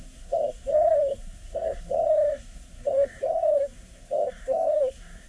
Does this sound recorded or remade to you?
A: remade